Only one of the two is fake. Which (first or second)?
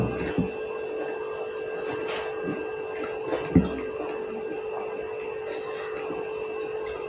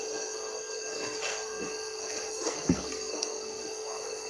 second